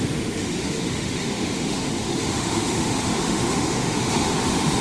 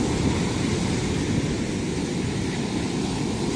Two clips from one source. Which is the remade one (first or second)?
first